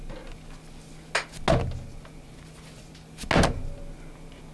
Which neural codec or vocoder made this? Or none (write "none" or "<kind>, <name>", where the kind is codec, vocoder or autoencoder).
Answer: none